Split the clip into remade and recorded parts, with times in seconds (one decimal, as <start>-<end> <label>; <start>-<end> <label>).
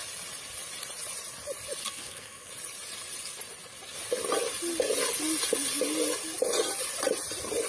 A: 0.0-1.8 recorded; 1.8-2.5 remade; 2.5-7.7 recorded